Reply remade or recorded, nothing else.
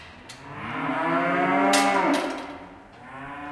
recorded